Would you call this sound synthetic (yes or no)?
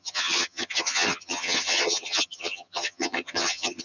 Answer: yes